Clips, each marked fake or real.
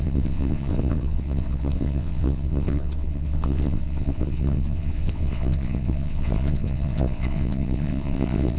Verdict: fake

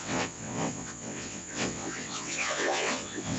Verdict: fake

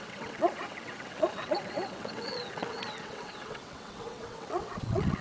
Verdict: fake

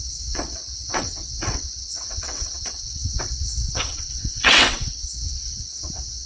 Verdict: fake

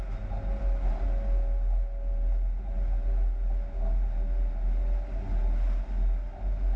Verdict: real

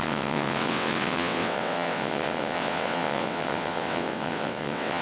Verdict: fake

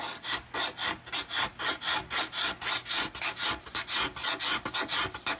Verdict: real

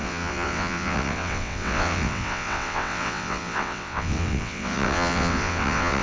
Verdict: fake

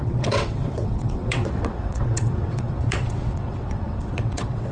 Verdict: fake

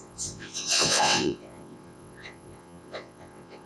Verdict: fake